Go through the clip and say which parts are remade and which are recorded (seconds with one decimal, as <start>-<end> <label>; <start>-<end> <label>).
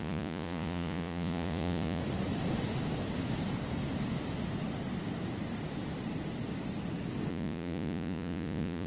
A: 0.0-2.0 remade; 2.0-7.3 recorded; 7.3-8.9 remade